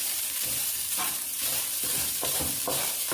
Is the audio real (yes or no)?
no